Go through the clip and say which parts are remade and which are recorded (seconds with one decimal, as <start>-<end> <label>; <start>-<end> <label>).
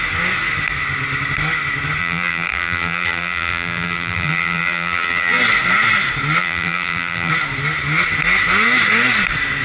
0.0-2.0 recorded; 2.0-5.4 remade; 5.4-6.4 recorded; 6.4-7.3 remade; 7.3-9.6 recorded